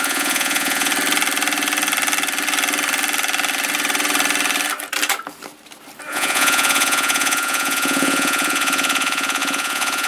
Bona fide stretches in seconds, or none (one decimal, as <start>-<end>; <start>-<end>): 0.9-6.1